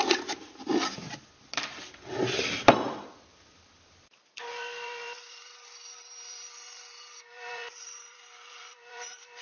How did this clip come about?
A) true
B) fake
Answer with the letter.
B